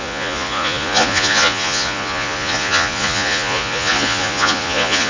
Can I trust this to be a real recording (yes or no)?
no